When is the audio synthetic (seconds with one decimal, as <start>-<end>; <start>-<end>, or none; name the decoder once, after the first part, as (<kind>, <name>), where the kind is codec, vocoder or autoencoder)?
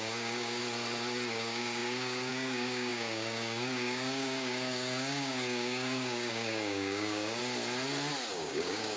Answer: 0.0-0.6 (codec, DAC); 1.3-7.4; 8.3-9.0